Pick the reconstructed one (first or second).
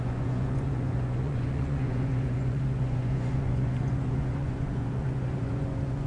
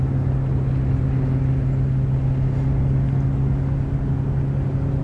first